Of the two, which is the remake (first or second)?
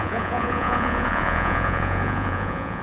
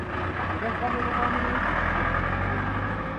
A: first